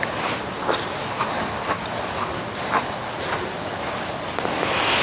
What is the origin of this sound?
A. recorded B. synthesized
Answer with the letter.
A